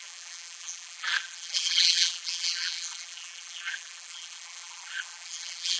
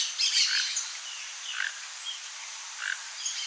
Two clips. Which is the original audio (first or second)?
second